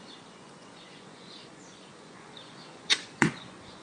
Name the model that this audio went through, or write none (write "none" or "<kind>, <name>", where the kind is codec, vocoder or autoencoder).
vocoder, Vocos